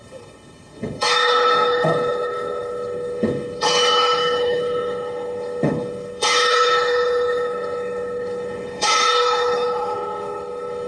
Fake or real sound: fake